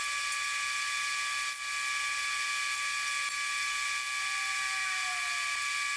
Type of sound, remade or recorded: recorded